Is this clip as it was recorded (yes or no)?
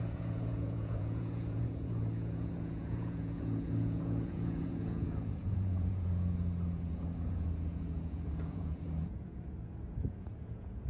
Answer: no